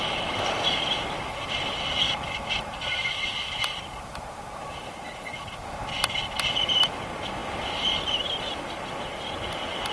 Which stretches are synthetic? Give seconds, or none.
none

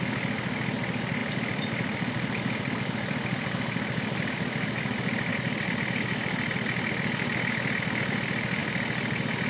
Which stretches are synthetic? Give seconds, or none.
1.2-5.3 (vocoder, BigVGAN v2)

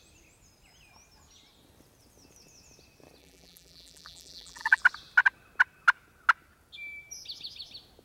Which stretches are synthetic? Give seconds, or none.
3.2-4.8 (vocoder, BigVGAN v2)